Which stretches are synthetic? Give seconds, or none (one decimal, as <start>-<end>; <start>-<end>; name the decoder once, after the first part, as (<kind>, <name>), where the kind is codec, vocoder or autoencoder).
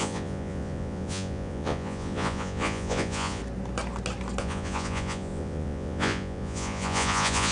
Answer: 0.0-3.4 (vocoder, Vocos); 4.4-7.5